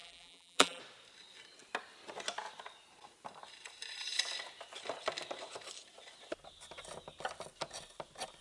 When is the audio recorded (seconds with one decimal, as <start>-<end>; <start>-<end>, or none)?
0.8-8.4